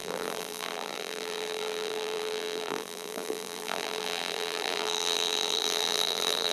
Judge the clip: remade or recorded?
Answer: remade